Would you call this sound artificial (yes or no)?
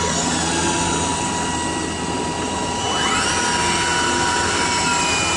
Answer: no